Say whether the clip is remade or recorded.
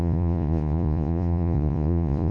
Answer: remade